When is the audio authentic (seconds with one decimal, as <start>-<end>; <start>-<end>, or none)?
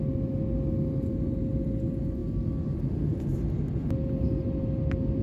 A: 0.0-5.2